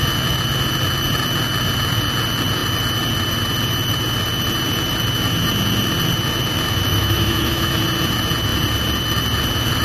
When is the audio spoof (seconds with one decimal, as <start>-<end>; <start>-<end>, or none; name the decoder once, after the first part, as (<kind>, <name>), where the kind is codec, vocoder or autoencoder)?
6.9-7.8 (autoencoder, DAC-VAE)